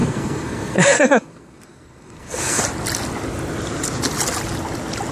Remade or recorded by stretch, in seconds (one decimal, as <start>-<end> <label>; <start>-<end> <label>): 0.0-2.6 remade; 2.6-5.1 recorded